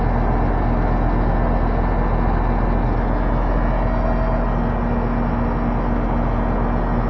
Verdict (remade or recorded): recorded